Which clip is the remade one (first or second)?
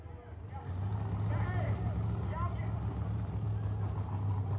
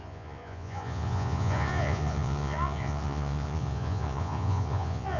second